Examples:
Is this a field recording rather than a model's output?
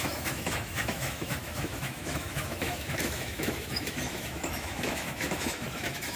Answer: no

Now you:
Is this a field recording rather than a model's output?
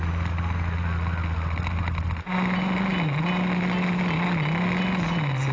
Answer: yes